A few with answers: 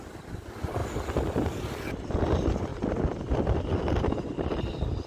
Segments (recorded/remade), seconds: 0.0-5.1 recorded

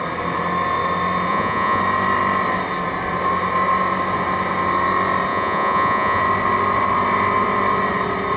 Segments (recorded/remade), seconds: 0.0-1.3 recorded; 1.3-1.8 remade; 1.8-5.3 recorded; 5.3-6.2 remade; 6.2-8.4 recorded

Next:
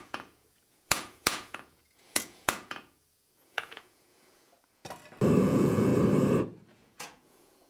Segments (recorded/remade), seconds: 0.0-4.8 remade; 4.8-5.4 recorded; 5.4-5.9 remade; 5.9-6.7 recorded; 6.7-7.7 remade